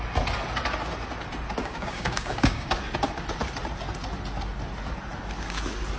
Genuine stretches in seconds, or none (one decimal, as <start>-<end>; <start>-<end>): 0.0-1.6; 2.7-6.0